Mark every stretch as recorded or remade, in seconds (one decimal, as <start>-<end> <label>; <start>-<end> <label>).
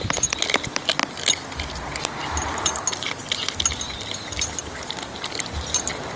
0.0-6.2 recorded